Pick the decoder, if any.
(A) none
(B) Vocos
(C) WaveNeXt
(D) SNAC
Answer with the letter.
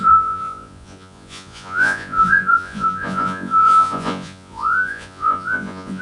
B